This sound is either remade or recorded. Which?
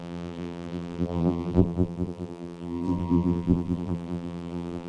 remade